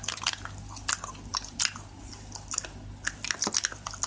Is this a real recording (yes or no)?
yes